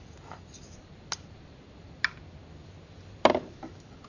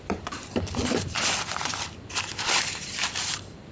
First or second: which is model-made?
second